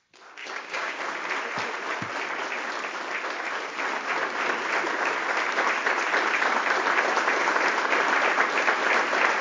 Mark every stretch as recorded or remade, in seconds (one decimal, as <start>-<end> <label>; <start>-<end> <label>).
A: 0.0-0.4 recorded; 0.4-1.0 remade; 1.0-9.4 recorded

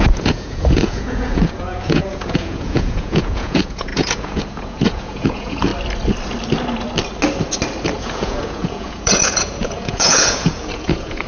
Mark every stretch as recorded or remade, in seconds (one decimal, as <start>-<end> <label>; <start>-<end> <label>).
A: 0.0-5.7 remade; 5.7-8.0 recorded; 8.0-11.3 remade

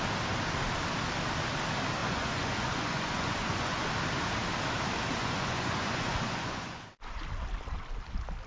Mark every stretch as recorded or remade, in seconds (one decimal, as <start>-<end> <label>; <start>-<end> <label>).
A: 0.0-2.0 recorded; 2.0-3.9 remade; 3.9-5.2 recorded; 5.2-7.2 remade; 7.2-8.5 recorded

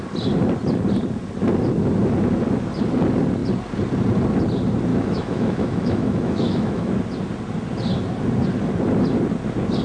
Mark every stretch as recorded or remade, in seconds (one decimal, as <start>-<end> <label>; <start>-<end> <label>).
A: 0.0-4.9 recorded; 4.9-6.9 remade; 6.9-9.8 recorded